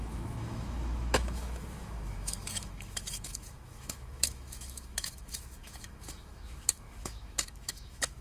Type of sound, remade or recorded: remade